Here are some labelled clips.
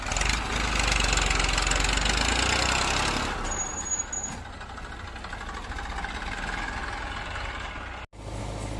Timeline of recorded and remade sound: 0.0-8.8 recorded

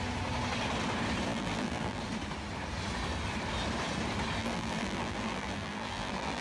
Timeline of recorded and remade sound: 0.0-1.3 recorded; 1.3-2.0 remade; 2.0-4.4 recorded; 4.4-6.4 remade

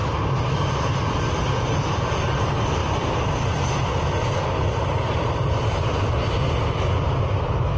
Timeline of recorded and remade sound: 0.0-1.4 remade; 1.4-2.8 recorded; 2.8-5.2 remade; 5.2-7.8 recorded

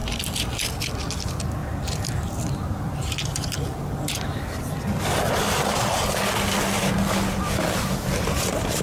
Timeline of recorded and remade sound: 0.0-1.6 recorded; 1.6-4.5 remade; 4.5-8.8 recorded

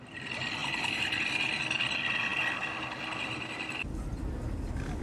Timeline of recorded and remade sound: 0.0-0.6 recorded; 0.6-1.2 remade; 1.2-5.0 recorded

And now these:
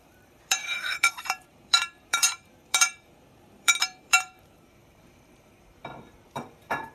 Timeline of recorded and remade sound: 0.0-6.9 remade

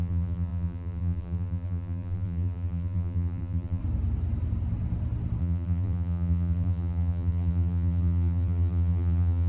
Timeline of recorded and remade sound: 0.0-3.8 remade; 3.8-5.4 recorded; 5.4-9.5 remade

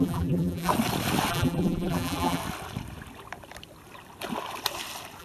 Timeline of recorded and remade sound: 0.0-0.7 remade; 0.7-1.3 recorded; 1.3-2.4 remade; 2.4-5.2 recorded